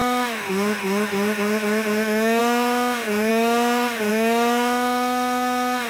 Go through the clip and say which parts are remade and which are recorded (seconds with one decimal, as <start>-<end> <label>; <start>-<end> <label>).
0.0-5.9 remade